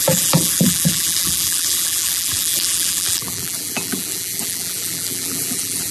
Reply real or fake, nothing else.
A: fake